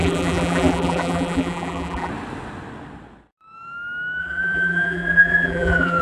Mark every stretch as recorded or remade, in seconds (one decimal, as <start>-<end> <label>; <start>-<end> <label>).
0.0-2.1 remade; 2.1-4.2 recorded; 4.2-6.0 remade